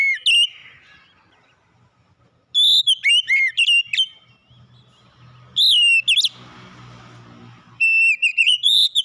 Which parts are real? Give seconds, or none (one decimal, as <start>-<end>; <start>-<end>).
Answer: 0.0-8.3

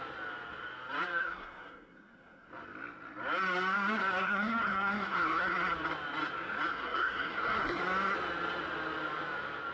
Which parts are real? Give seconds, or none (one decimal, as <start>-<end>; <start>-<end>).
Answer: 0.0-1.2; 2.5-4.0; 5.5-6.7; 7.8-9.7

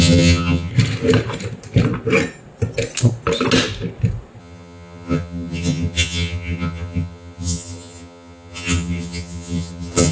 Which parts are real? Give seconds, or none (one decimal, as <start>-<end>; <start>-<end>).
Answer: 0.7-4.4

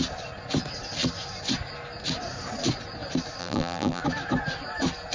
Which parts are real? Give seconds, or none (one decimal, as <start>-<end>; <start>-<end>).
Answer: 0.0-3.4; 4.0-5.1

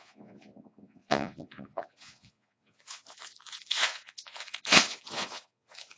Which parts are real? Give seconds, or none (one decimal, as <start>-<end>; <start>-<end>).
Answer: none